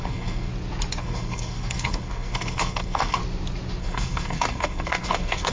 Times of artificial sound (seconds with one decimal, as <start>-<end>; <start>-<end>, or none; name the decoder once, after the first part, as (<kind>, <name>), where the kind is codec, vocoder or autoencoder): 0.0-0.5 (codec, SNAC); 1.0-3.2; 3.8-5.5